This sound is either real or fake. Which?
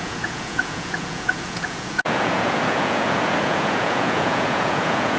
fake